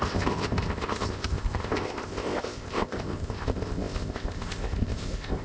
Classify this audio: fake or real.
fake